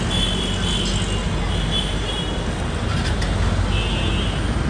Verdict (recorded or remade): recorded